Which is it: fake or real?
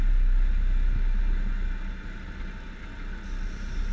real